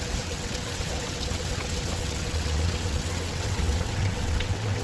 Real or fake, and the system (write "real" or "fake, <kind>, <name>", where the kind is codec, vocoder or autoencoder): fake, vocoder, WaveNeXt